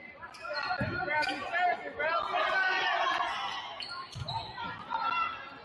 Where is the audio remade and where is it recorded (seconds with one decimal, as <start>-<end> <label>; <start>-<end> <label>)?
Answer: 0.0-5.6 recorded